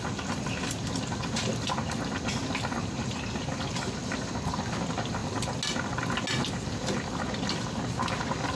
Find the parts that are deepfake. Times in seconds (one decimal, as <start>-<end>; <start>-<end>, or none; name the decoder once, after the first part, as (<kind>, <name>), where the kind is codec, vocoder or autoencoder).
none